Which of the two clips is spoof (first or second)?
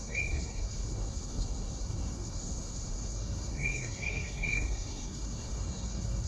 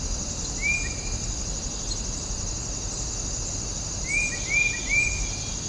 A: first